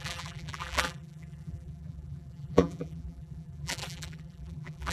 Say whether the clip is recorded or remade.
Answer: remade